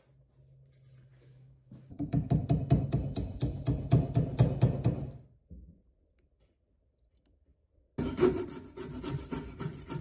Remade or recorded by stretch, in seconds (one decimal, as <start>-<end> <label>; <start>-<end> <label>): 0.0-1.1 recorded; 1.1-2.3 remade; 2.3-10.0 recorded

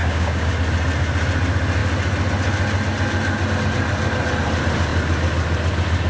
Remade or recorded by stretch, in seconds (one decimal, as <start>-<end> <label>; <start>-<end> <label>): 0.0-0.5 remade; 0.5-6.1 recorded

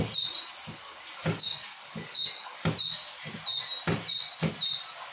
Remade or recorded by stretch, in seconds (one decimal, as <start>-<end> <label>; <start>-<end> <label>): 0.0-0.8 recorded; 0.8-2.7 remade; 2.7-5.1 recorded

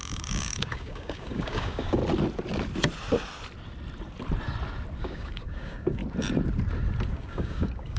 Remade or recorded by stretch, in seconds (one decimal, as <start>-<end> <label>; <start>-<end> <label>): 0.0-2.0 remade; 2.0-5.0 recorded; 5.0-6.0 remade; 6.0-7.1 recorded; 7.1-8.0 remade

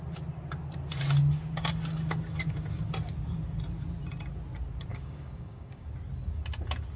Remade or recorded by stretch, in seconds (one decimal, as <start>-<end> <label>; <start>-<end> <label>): 0.0-4.9 recorded; 4.9-5.9 remade; 5.9-7.0 recorded

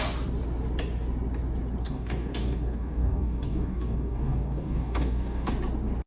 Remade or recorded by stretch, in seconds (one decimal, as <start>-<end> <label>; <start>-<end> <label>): 0.0-1.8 recorded; 1.8-5.5 remade; 5.5-6.1 recorded

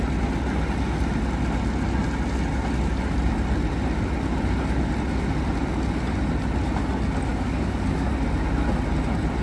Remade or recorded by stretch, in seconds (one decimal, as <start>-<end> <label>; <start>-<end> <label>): 0.0-7.3 recorded; 7.3-8.1 remade; 8.1-9.4 recorded